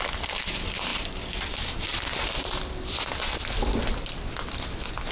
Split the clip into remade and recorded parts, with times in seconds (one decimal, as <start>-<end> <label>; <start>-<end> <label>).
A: 0.0-5.1 recorded